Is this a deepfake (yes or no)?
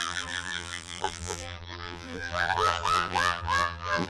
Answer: yes